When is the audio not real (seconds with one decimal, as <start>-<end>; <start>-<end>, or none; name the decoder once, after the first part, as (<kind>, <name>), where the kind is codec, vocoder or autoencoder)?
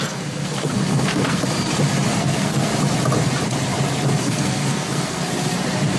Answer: 0.0-1.4 (codec, SNAC); 2.2-2.7; 4.2-5.2